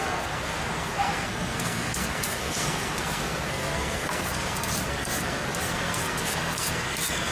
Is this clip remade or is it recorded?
remade